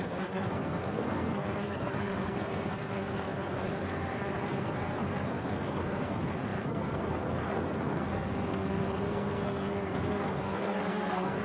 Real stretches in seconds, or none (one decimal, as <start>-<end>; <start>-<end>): none